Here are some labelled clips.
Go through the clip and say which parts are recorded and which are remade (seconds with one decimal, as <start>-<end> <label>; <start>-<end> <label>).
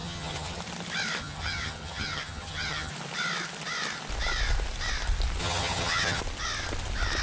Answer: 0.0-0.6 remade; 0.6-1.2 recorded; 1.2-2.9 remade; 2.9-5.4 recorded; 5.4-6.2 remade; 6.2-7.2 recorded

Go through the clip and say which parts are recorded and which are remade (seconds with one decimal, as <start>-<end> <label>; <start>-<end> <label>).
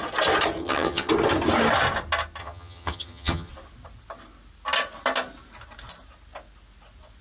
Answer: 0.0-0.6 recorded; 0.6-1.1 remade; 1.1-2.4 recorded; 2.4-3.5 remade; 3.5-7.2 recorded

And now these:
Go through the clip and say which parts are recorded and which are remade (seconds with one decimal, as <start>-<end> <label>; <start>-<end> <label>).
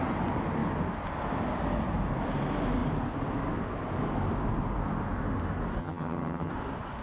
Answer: 0.0-5.8 recorded; 5.8-6.5 remade; 6.5-7.0 recorded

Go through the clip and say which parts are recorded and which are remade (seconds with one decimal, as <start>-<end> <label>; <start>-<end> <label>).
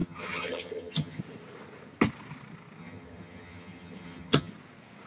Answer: 0.0-1.2 remade; 1.2-2.8 recorded; 2.8-4.5 remade; 4.5-5.1 recorded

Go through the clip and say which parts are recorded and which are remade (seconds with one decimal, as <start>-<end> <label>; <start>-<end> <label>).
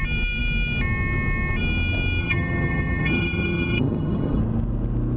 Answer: 0.0-2.2 recorded; 2.2-4.4 remade; 4.4-5.2 recorded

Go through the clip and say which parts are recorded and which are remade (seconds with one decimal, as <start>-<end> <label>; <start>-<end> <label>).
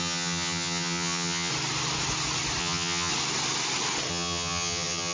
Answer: 0.0-1.5 remade; 1.5-2.6 recorded; 2.6-3.1 remade; 3.1-4.1 recorded; 4.1-5.1 remade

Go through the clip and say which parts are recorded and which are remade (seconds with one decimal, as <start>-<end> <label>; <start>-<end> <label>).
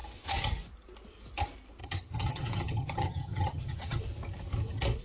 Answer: 0.0-1.8 recorded; 1.8-4.0 remade; 4.0-5.0 recorded